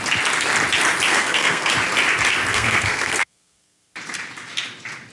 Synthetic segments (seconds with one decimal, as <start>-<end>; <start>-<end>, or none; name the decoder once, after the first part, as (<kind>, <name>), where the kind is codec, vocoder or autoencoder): 1.1-1.7 (codec, SNAC); 2.5-3.9